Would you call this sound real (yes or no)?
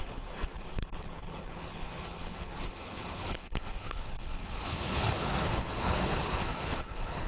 no